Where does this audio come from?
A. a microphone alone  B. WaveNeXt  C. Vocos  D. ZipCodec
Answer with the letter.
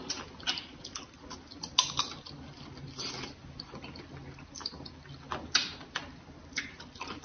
A